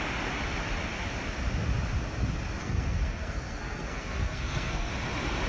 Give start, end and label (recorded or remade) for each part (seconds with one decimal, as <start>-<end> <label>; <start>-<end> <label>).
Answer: 0.0-2.6 recorded; 2.6-4.9 remade; 4.9-5.5 recorded